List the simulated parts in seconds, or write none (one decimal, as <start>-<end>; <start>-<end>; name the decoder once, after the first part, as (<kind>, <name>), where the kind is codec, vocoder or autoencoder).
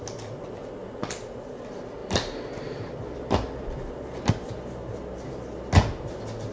none